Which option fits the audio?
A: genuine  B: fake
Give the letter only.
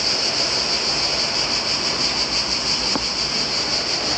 A